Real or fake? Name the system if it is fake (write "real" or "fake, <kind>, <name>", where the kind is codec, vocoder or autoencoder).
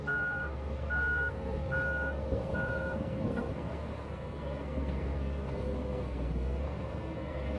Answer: fake, codec, SNAC